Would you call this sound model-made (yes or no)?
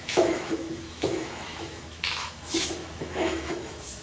yes